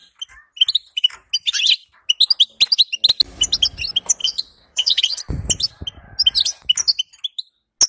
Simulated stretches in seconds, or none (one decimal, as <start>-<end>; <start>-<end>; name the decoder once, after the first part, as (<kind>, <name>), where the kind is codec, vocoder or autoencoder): 4.2-5.2 (vocoder, WaveNeXt)